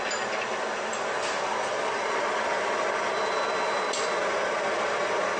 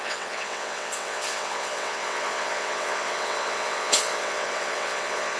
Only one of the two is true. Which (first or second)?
first